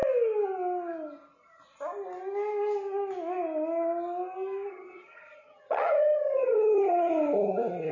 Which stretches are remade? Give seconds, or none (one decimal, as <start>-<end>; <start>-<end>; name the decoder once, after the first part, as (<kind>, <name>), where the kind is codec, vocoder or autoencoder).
4.7-7.1 (vocoder, HiFi-GAN)